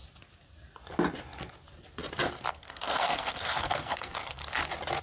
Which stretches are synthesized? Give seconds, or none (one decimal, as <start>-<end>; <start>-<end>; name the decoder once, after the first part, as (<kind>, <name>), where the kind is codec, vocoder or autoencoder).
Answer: 2.5-4.4 (codec, SNAC)